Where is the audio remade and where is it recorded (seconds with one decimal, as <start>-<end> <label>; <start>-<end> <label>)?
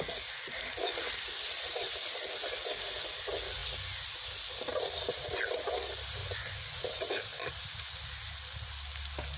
0.0-6.2 recorded; 6.2-6.8 remade; 6.8-9.4 recorded